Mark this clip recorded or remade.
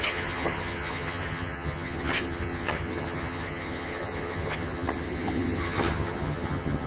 remade